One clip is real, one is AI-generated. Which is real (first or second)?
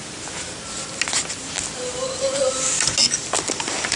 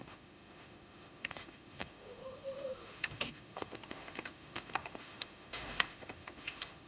first